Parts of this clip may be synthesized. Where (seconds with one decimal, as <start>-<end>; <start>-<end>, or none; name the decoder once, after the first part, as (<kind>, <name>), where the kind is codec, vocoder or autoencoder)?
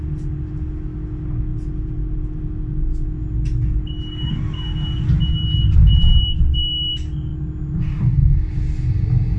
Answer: none